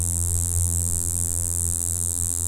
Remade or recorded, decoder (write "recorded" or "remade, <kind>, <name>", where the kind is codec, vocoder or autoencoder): remade, vocoder, BigVGAN v2